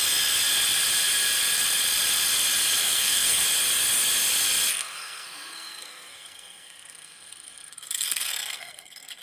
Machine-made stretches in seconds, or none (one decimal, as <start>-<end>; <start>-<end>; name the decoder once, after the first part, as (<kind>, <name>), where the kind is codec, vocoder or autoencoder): 2.8-3.4 (codec, SNAC); 4.7-9.2